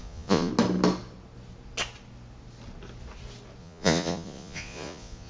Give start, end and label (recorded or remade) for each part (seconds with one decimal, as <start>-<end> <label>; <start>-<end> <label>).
0.0-0.5 remade; 0.5-3.6 recorded; 3.6-5.3 remade